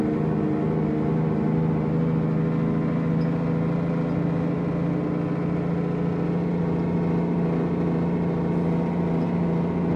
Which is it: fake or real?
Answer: real